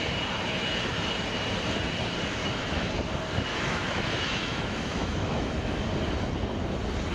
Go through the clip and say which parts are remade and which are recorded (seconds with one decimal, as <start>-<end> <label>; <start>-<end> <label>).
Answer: 0.0-2.4 recorded; 2.4-2.9 remade; 2.9-3.5 recorded; 3.5-5.8 remade; 5.8-7.1 recorded